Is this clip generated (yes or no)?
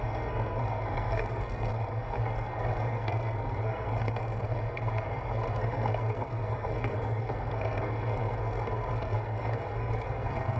yes